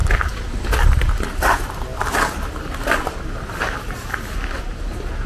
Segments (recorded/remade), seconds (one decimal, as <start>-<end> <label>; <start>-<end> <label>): 0.0-5.3 recorded